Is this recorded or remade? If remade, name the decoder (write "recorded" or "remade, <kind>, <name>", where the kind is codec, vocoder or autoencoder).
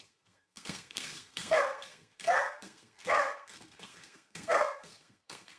remade, codec, SNAC